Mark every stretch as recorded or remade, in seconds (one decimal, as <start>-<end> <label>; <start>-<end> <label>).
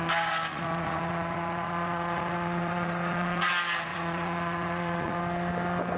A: 0.0-0.5 recorded; 0.5-3.5 remade; 3.5-3.9 recorded; 3.9-5.2 remade; 5.2-6.0 recorded